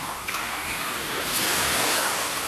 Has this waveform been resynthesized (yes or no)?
yes